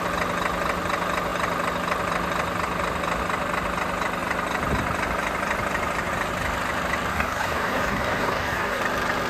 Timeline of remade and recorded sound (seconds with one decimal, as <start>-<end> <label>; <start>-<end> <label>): 0.0-7.1 recorded; 7.1-8.8 remade; 8.8-9.3 recorded